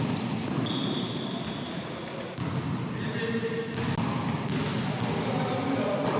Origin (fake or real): real